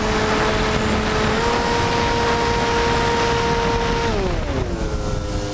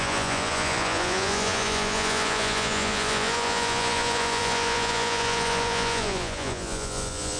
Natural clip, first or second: first